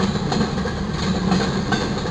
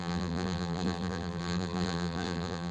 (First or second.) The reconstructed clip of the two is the second